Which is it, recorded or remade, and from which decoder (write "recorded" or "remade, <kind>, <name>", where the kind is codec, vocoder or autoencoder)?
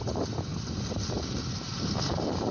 recorded